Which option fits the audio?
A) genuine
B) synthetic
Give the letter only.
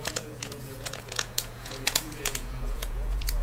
B